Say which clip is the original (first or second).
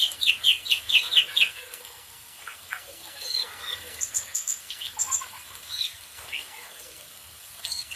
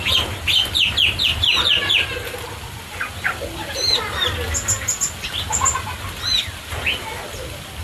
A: second